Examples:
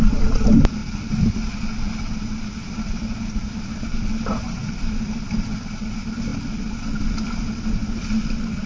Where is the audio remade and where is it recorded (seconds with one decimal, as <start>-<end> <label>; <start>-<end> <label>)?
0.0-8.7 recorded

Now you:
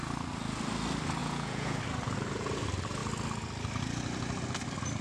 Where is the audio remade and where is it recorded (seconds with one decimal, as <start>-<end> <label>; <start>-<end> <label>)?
0.0-1.2 recorded; 1.2-1.8 remade; 1.8-5.0 recorded

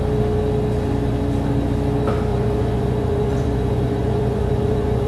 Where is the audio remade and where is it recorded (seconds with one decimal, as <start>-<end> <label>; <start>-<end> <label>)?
0.0-2.3 recorded; 2.3-5.1 remade